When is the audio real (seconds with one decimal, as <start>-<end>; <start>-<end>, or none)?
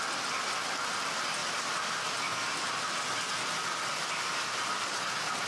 0.0-5.5